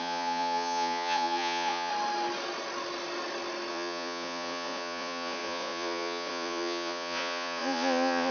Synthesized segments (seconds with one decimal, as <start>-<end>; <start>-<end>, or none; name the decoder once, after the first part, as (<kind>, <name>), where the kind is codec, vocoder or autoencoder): 0.0-1.9 (vocoder, Vocos); 3.7-8.3